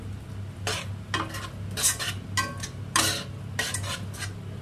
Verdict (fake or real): real